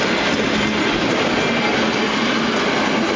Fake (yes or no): no